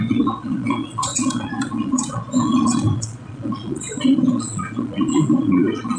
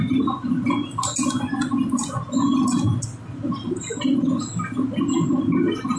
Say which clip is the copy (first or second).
first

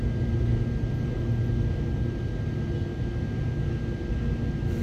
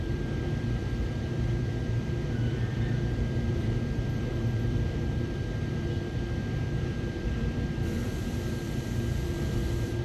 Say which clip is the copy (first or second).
second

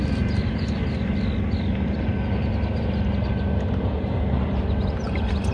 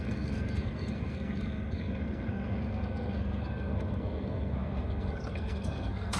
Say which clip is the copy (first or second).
second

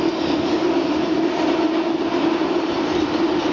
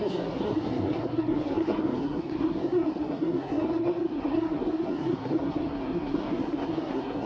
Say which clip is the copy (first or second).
second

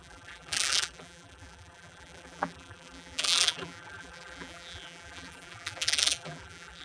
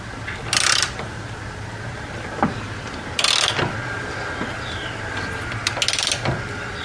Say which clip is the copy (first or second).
first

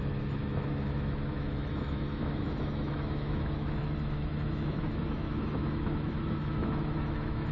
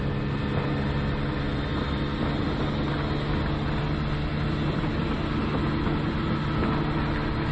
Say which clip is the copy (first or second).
first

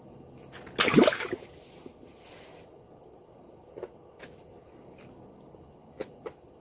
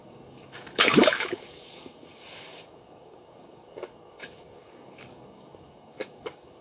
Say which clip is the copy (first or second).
second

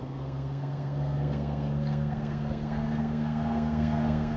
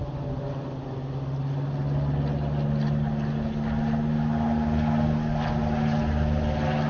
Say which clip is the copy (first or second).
first